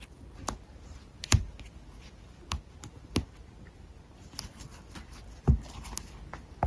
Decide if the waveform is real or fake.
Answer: real